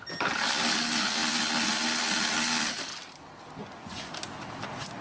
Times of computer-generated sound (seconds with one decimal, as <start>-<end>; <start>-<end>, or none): 3.6-4.1